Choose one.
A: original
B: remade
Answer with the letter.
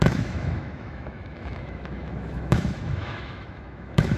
B